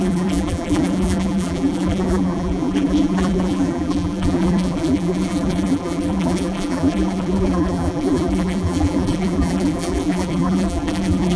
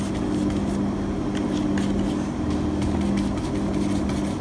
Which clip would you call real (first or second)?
second